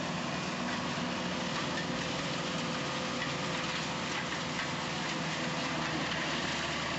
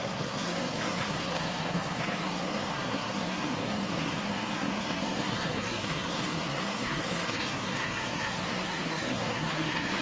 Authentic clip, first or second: first